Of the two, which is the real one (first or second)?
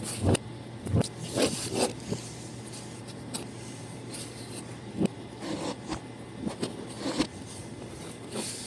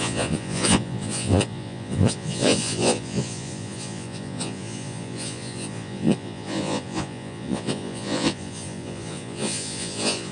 first